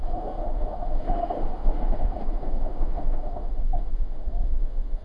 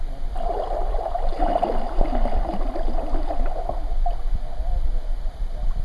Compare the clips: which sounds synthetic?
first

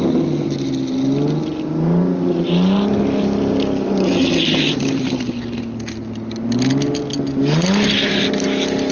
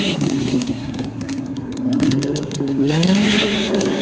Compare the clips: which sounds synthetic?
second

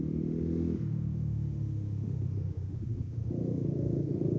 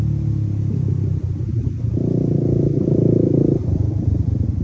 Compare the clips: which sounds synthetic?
first